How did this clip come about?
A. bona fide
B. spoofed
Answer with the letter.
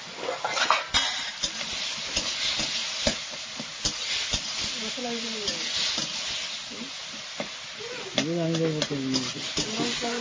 A